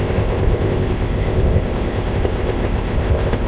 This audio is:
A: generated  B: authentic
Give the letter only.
A